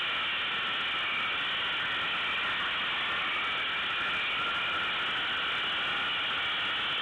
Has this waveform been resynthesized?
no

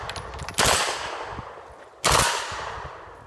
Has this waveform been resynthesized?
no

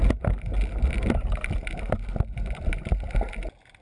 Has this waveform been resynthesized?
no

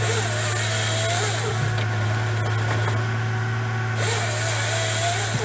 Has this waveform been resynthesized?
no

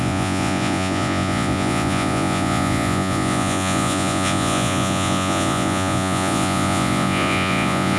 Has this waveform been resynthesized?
yes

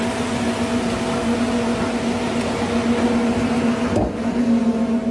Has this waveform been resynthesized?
no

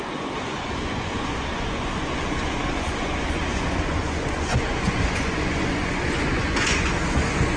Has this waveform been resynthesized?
yes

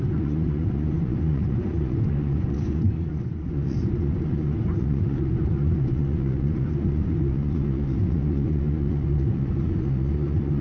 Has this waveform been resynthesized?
yes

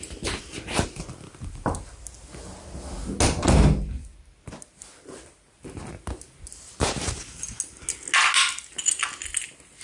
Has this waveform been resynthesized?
no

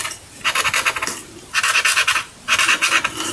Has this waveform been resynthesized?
no